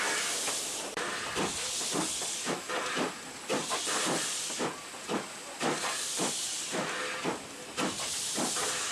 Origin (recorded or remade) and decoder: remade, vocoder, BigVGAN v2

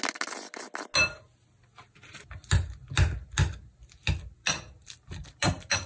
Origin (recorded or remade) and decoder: recorded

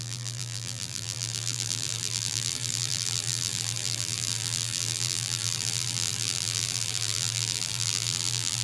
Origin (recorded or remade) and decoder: remade, vocoder, BigVGAN v2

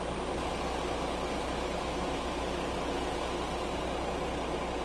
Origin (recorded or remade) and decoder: recorded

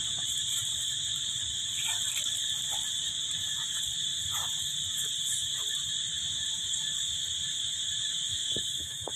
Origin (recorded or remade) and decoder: remade, vocoder, BigVGAN v2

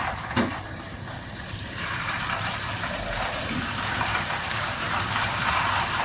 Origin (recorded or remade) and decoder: remade, vocoder, BigVGAN v2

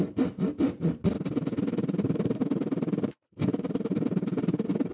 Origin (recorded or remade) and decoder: remade, vocoder, BigVGAN v2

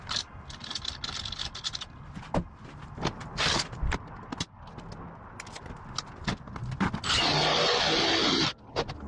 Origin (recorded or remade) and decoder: recorded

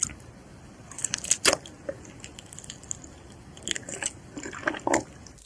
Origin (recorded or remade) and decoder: recorded